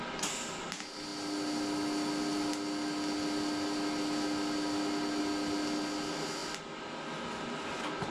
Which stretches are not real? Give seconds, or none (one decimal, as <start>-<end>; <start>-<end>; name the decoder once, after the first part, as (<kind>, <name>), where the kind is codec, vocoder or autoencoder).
none